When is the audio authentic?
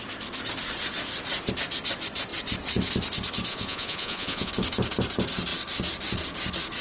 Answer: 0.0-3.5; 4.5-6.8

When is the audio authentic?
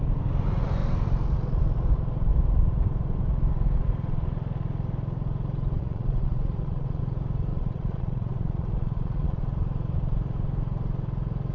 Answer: 0.0-5.8; 7.0-7.5; 9.4-11.5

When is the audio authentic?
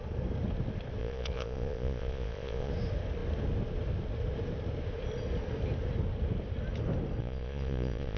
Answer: 0.0-1.0; 2.7-7.2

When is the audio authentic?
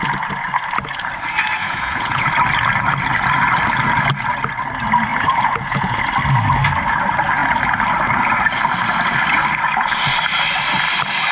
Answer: 0.0-1.6; 2.3-5.1; 6.0-11.3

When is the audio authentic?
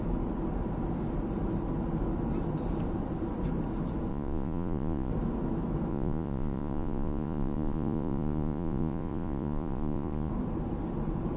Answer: 0.0-4.1; 5.1-5.9; 10.3-11.4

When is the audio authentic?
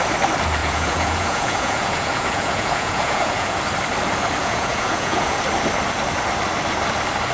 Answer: 0.0-0.6; 3.6-4.4; 5.4-7.3